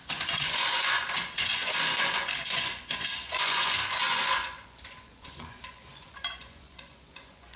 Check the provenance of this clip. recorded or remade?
remade